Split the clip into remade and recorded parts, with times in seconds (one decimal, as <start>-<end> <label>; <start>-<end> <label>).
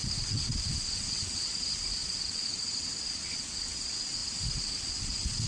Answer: 0.0-5.5 remade